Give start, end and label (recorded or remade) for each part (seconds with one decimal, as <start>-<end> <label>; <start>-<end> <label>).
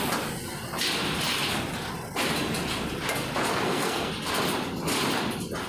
0.0-3.5 recorded; 3.5-4.1 remade; 4.1-5.7 recorded